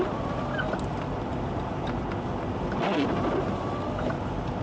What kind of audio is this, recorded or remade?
recorded